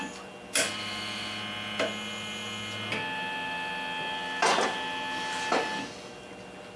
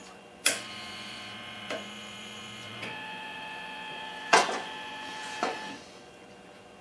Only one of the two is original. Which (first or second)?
first